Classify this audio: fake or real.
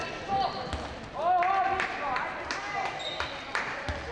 real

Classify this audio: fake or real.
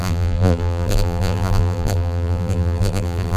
fake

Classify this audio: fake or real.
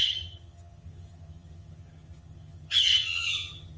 fake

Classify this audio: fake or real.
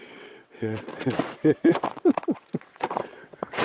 fake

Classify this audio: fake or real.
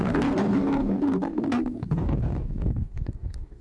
fake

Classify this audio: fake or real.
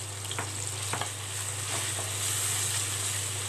real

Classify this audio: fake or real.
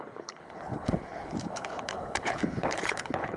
fake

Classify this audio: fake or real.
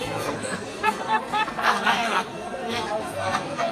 fake